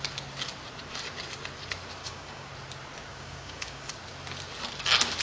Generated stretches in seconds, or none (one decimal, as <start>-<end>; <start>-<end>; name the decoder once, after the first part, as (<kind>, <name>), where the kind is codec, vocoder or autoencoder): 2.0-2.5 (codec, DAC); 3.1-3.9